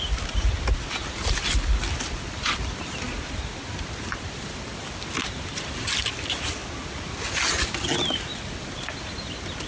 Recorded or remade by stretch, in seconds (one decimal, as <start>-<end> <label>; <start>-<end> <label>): 0.0-9.7 recorded